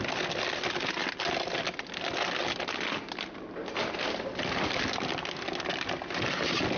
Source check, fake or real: real